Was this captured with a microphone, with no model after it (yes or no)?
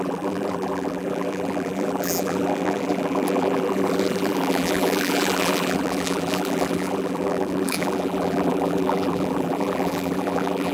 no